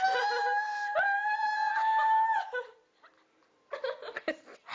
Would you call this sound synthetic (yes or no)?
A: no